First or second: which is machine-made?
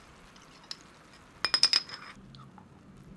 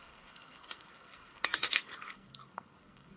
second